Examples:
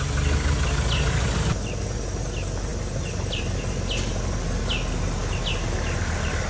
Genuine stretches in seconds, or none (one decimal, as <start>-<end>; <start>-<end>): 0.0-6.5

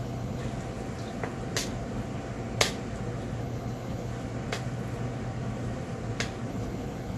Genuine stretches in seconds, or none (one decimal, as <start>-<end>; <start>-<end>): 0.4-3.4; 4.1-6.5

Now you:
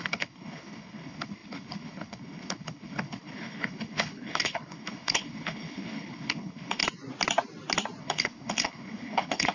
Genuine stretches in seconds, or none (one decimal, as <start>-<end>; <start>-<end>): 6.8-8.0

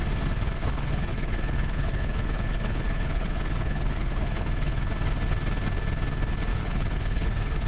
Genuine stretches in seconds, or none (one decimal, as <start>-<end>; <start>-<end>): 0.0-0.6; 4.9-6.5

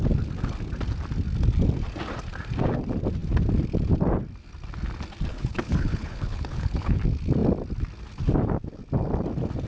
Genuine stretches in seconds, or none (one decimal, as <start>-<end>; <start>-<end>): 0.0-5.3; 7.0-9.7